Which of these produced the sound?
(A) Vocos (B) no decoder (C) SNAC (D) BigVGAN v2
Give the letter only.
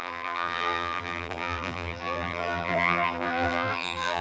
D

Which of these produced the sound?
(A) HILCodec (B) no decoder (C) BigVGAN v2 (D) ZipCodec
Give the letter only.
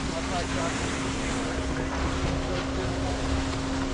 B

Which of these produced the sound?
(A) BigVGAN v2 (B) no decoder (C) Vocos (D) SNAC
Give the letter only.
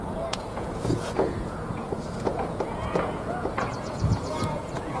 C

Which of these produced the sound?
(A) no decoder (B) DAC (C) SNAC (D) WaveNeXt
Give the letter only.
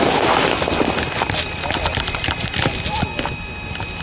A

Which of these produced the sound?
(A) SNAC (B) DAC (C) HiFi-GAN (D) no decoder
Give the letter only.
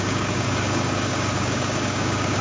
B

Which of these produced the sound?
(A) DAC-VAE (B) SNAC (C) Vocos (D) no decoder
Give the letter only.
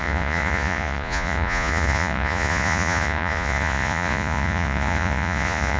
C